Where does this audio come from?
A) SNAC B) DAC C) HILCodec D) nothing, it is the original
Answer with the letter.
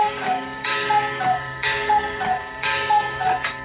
B